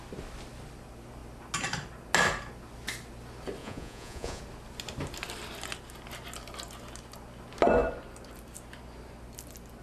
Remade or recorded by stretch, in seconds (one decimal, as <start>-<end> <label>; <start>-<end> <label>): 0.0-3.6 recorded; 3.6-4.4 remade; 4.4-9.8 recorded